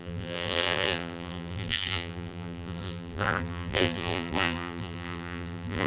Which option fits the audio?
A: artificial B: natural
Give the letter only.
A